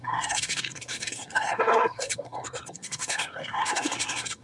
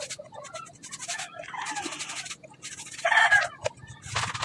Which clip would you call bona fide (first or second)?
second